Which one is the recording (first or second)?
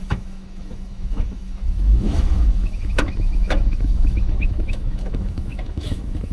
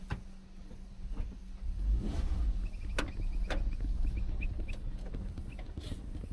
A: second